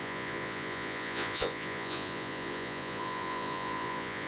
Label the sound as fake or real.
fake